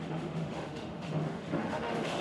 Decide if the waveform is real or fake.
fake